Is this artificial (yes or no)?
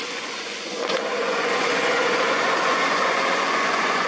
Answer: yes